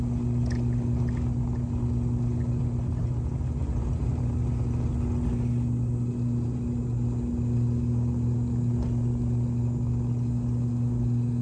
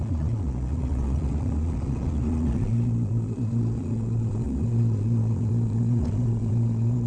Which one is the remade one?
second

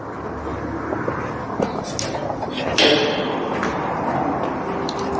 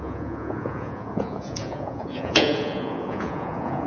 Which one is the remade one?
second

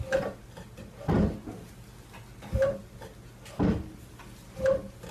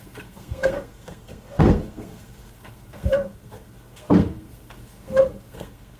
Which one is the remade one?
second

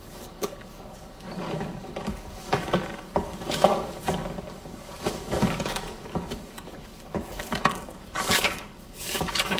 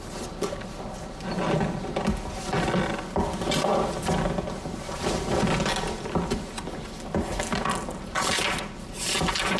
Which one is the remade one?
first